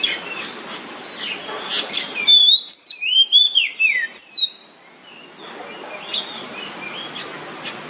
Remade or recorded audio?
recorded